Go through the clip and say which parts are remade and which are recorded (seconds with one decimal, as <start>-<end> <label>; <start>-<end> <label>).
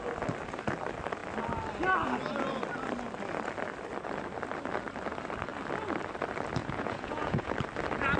0.0-6.6 recorded; 6.6-7.5 remade; 7.5-8.2 recorded